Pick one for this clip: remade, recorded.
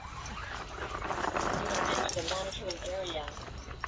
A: recorded